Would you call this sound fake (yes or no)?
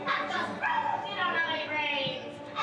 no